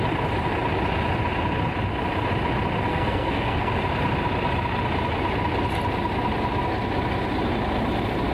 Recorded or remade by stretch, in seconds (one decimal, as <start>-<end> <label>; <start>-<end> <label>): 0.0-2.9 recorded; 2.9-3.7 remade; 3.7-8.3 recorded